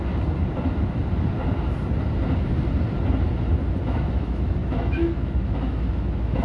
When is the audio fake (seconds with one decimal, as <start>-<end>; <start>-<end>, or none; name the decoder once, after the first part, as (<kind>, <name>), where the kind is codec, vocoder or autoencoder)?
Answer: 3.8-6.4 (autoencoder, DAC-VAE)